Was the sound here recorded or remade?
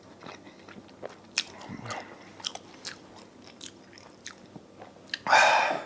recorded